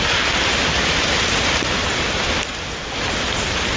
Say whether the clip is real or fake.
real